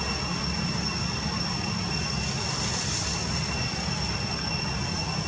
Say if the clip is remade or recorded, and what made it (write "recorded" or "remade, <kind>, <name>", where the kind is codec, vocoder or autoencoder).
recorded